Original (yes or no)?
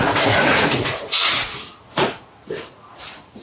no